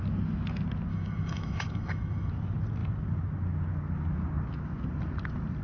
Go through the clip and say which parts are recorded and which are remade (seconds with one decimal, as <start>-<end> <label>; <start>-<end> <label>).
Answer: 0.0-0.9 recorded; 0.9-2.3 remade; 2.3-5.6 recorded